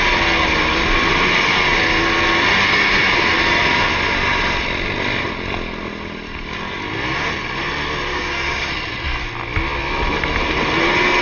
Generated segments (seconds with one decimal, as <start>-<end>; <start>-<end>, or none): 8.1-8.7